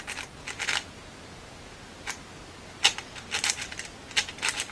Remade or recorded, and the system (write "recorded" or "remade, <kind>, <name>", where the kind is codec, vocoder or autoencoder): recorded